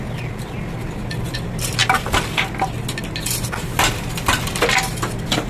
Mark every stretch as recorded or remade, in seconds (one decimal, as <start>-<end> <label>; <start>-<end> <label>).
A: 0.0-5.5 recorded

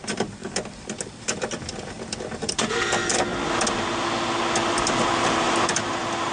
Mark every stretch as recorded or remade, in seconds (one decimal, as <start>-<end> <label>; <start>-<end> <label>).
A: 0.0-0.4 remade; 0.4-2.4 recorded; 2.4-3.3 remade; 3.3-4.7 recorded; 4.7-6.3 remade

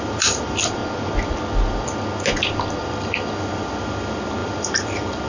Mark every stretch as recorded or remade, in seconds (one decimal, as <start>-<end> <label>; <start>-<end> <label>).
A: 0.0-0.8 remade; 0.8-2.8 recorded; 2.8-5.3 remade

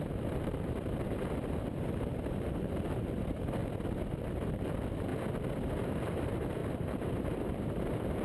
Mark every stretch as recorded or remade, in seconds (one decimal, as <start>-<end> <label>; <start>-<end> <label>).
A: 0.0-3.6 remade; 3.6-4.2 recorded; 4.2-5.1 remade; 5.1-5.6 recorded; 5.6-8.2 remade